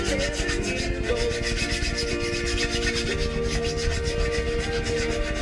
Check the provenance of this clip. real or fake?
real